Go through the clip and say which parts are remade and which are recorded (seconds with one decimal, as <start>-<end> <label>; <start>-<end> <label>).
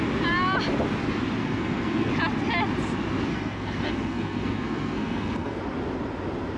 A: 0.0-1.4 recorded; 1.4-2.1 remade; 2.1-3.3 recorded; 3.3-5.6 remade; 5.6-6.6 recorded